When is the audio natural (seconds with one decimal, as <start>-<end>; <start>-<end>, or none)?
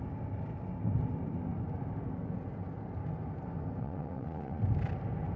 0.0-3.8; 4.6-5.4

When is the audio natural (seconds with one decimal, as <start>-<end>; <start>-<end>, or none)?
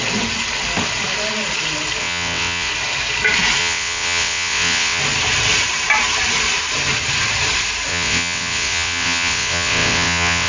0.0-2.0; 2.7-3.6; 5.0-7.9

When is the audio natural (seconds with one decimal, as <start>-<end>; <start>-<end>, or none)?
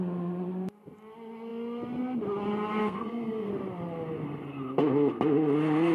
0.0-2.8; 3.5-5.9